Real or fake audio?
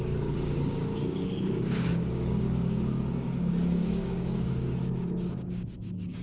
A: fake